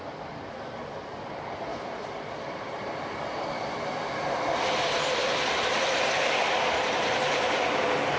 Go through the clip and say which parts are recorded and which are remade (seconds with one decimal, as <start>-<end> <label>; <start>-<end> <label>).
0.0-8.2 recorded